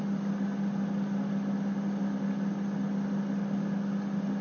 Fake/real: real